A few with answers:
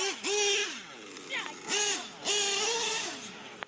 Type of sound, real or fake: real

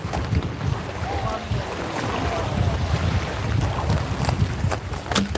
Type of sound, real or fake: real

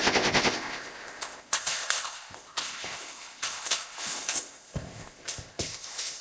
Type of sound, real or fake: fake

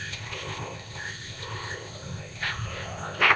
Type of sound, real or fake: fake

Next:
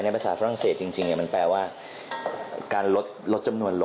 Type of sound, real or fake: real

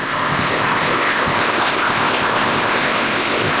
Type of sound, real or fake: fake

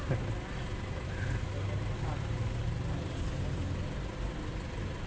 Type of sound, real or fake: real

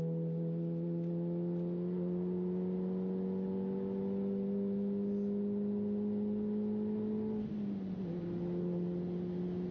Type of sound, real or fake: real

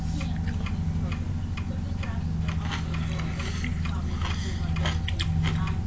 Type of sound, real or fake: real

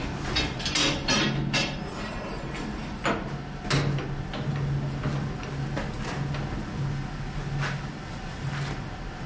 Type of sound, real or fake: real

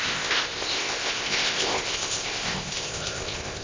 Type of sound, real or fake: fake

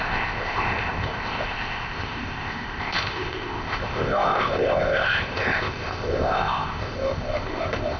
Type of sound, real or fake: fake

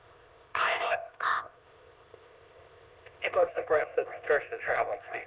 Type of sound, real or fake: fake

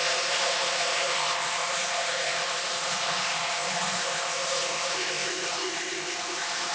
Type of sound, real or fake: fake